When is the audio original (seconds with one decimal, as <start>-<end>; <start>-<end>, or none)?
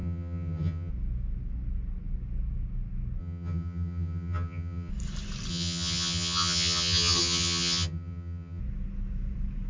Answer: 0.9-3.2; 4.9-5.5; 8.6-9.7